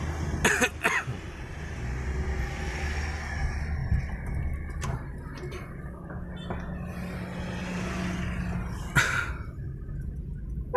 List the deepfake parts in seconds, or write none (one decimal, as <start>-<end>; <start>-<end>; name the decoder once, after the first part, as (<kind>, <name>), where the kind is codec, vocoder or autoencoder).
0.7-1.5 (vocoder, BigVGAN v2)